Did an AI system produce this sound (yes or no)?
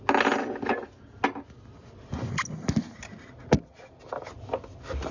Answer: no